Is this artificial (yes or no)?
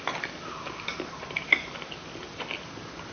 no